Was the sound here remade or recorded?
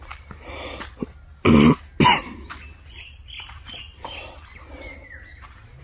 recorded